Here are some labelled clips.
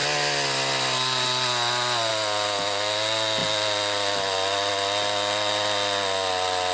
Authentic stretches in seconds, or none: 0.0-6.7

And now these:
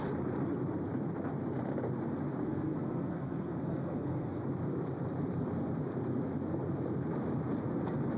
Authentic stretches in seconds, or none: 0.0-2.4; 4.4-8.2

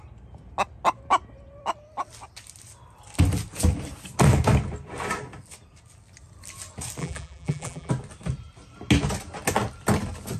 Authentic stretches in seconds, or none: 0.0-7.0; 7.9-10.4

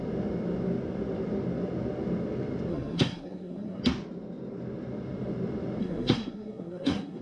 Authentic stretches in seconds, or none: 0.0-2.7; 3.8-5.8

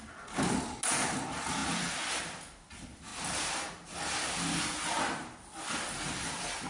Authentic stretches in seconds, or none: 0.0-6.7